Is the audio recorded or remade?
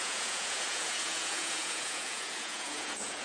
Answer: remade